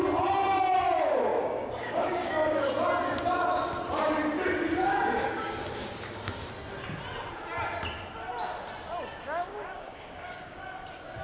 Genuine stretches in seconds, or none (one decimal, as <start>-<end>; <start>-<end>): 0.0-1.3; 2.7-4.8; 6.5-9.5; 10.6-11.2